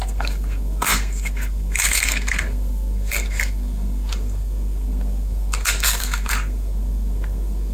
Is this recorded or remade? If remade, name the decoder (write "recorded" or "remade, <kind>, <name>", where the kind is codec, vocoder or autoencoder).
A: remade, codec, SNAC